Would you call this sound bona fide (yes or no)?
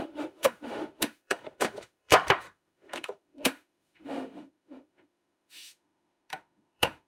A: no